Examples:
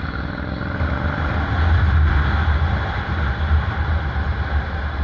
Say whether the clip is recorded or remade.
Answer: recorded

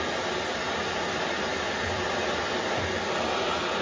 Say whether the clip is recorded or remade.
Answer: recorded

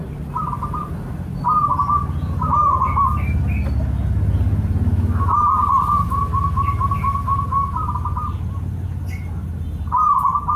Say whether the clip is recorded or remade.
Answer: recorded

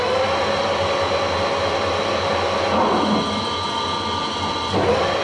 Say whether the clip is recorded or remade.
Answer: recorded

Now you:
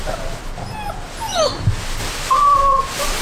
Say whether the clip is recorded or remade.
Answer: recorded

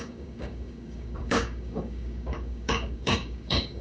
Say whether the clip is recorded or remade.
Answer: remade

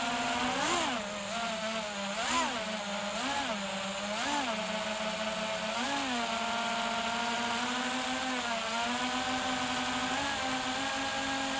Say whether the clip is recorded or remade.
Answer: recorded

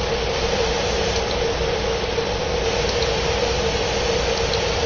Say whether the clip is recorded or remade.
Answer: recorded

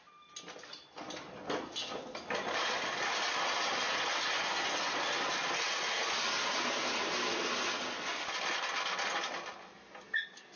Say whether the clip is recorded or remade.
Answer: recorded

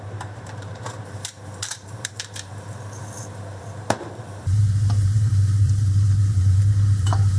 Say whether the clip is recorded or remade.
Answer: remade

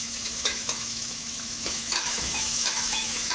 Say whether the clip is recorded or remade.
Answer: remade